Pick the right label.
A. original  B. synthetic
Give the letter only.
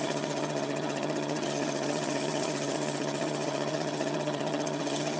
B